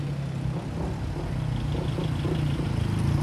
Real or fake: real